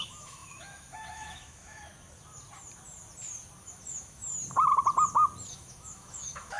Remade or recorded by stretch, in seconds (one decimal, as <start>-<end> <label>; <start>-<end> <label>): 0.0-1.9 remade; 1.9-3.6 recorded; 3.6-4.2 remade; 4.2-5.5 recorded; 5.5-6.6 remade